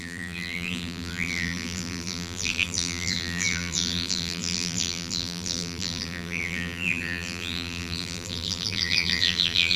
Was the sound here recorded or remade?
remade